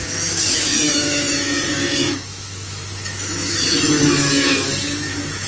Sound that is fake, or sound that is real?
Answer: fake